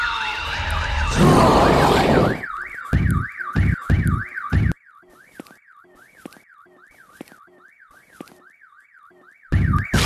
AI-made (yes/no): yes